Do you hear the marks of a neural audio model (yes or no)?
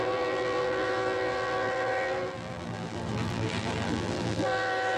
yes